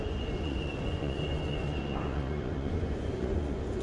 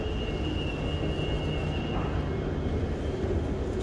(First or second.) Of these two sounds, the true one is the second